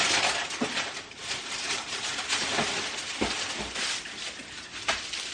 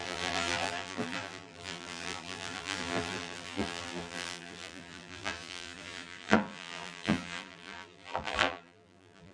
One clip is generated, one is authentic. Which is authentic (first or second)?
first